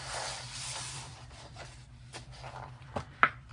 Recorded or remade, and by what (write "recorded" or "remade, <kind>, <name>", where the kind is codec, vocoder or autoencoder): remade, vocoder, BigVGAN v2